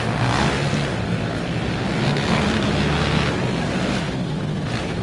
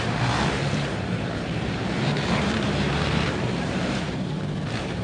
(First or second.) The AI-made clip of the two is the second